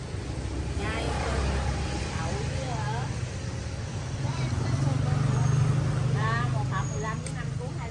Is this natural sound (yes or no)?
yes